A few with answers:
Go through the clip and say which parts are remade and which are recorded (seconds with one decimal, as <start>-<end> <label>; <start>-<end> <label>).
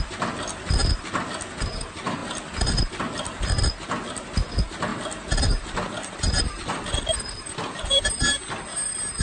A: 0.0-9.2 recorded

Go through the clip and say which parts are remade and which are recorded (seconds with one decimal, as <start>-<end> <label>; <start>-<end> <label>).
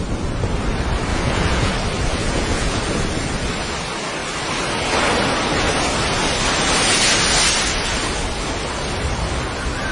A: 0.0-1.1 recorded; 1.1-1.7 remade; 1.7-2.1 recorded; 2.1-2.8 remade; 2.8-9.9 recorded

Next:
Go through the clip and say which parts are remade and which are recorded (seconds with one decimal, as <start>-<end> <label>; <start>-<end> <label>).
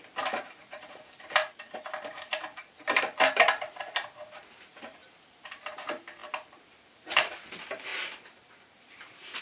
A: 0.0-1.4 remade; 1.4-2.1 recorded; 2.1-9.4 remade